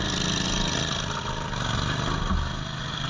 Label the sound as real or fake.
real